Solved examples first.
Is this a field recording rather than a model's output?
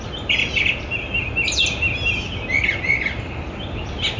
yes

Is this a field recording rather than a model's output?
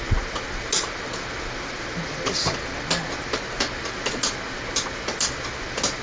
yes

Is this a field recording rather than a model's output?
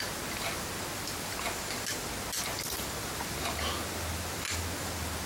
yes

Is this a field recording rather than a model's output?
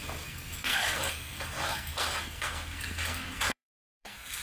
no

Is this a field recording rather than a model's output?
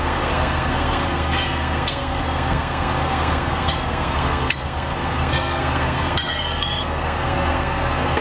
no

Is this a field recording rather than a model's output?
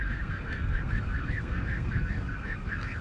no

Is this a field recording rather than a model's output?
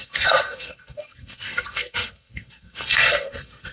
no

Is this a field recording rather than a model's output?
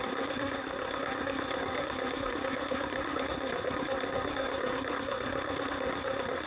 no